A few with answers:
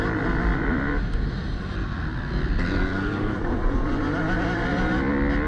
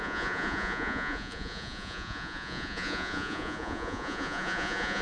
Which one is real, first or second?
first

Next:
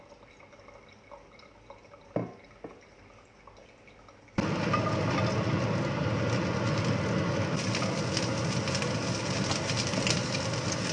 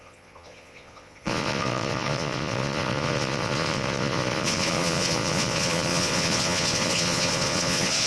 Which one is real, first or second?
first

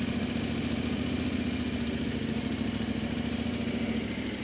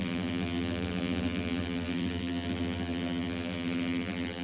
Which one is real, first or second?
first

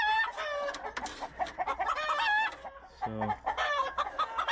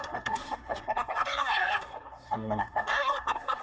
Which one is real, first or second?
first